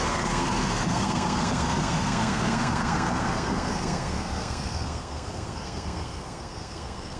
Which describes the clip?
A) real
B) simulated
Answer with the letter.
B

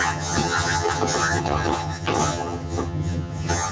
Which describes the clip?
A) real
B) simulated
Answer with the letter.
B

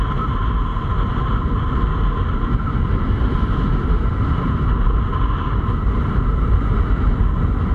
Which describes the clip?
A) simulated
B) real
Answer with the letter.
B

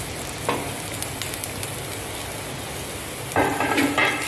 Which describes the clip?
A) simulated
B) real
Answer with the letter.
B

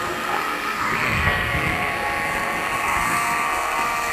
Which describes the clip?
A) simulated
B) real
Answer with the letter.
A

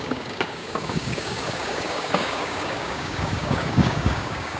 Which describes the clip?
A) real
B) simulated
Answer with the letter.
B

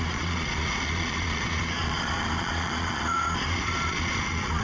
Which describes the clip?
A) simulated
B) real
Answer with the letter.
A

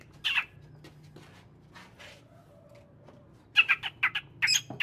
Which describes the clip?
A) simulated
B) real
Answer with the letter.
B